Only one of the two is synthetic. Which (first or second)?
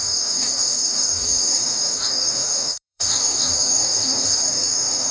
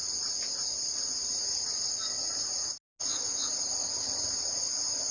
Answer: first